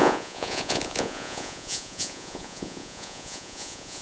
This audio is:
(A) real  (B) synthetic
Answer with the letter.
B